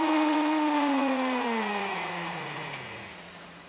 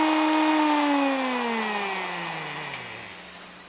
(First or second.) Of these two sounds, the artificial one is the first